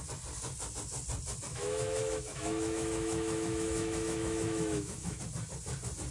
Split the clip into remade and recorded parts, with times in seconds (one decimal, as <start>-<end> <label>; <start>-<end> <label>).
0.0-1.5 recorded; 1.5-5.2 remade; 5.2-6.1 recorded